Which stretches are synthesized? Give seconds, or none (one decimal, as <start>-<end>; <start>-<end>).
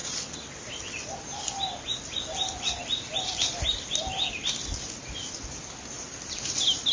0.0-0.7